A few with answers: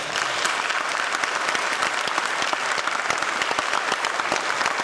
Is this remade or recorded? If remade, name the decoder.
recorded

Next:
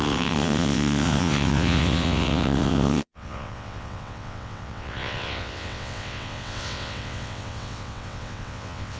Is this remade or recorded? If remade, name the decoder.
remade, vocoder, WaveNeXt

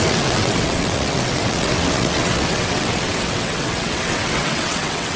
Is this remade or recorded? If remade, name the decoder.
remade, vocoder, WaveNeXt